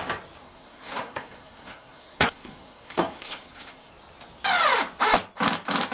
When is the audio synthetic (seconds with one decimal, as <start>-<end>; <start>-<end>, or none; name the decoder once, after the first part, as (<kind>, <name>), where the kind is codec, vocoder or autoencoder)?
0.4-3.9 (codec, SNAC)